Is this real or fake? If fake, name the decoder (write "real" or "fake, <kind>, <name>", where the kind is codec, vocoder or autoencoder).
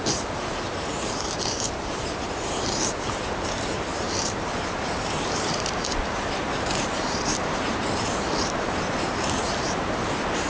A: fake, vocoder, BigVGAN v2